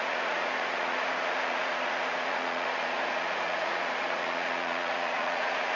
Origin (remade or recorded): remade